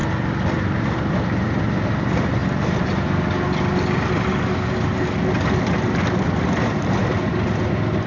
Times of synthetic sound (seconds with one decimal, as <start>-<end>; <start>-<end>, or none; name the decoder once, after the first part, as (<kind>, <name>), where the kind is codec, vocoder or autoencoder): 1.6-2.4 (vocoder, BigVGAN v2); 5.4-8.1